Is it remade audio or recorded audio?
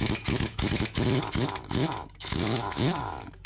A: remade